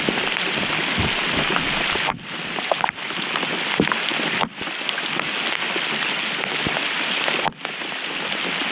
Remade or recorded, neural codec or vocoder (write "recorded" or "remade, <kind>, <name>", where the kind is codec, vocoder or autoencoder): recorded